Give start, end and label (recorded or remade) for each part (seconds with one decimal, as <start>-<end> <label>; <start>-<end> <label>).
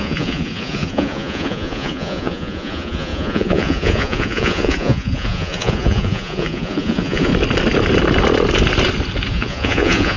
0.0-7.3 remade; 7.3-9.3 recorded; 9.3-10.2 remade